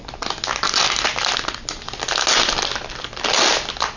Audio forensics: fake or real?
real